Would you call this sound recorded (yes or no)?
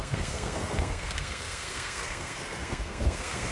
no